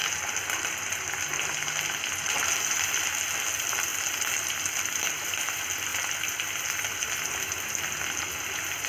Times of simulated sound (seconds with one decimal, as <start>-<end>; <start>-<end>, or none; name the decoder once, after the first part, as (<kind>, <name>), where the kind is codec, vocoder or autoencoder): 0.0-1.1 (vocoder, BigVGAN v2); 3.9-5.4